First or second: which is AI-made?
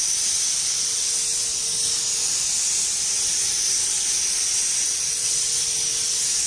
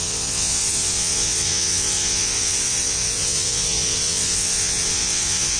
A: second